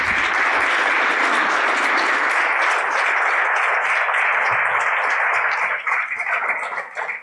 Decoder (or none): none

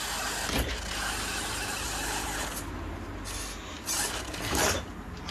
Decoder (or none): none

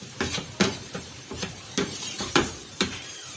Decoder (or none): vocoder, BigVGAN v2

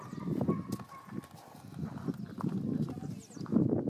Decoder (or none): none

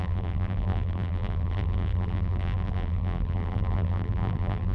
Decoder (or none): vocoder, BigVGAN v2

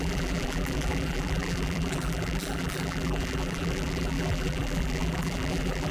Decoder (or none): vocoder, BigVGAN v2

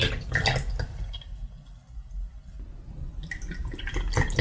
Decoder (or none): none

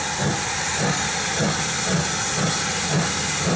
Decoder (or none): none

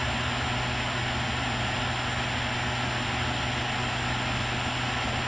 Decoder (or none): none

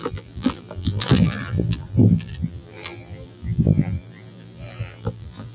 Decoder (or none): vocoder, BigVGAN v2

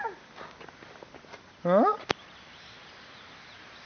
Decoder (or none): none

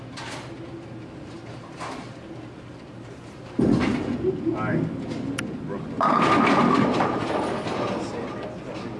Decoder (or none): none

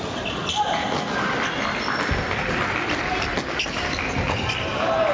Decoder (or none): none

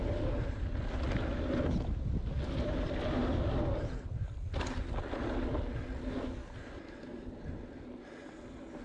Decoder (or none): none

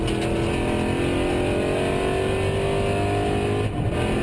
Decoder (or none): none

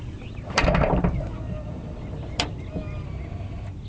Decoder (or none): vocoder, BigVGAN v2